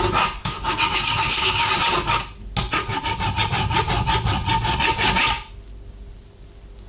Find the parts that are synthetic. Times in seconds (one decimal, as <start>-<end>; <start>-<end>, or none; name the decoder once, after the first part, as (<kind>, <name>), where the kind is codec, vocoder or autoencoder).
0.4-1.7 (codec, DAC)